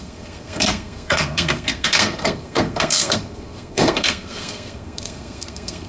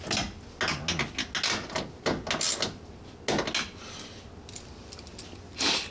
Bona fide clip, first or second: second